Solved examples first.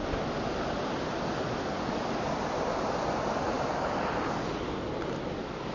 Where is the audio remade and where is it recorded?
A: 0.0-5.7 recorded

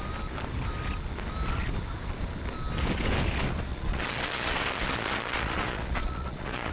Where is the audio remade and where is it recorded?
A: 0.0-3.7 recorded; 3.7-6.7 remade